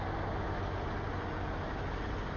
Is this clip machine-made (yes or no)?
no